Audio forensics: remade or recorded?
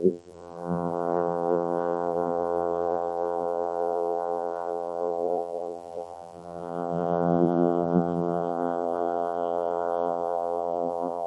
remade